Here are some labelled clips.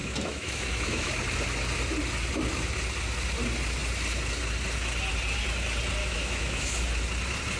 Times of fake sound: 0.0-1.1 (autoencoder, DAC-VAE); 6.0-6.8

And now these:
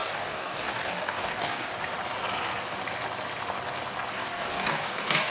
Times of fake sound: 0.0-1.7 (codec, DAC); 4.1-5.3

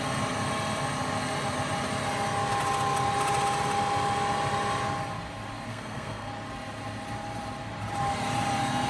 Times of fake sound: 5.7-6.3 (codec, SNAC)

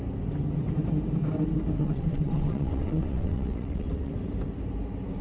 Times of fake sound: 1.8-4.1 (vocoder, WaveNeXt)

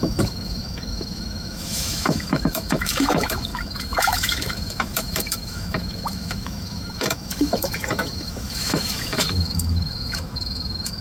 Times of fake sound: 0.0-11.0 (autoencoder, DAC-VAE)

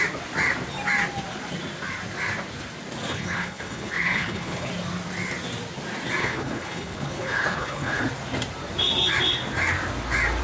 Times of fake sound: 3.1-4.7 (codec, HILCodec); 6.2-8.0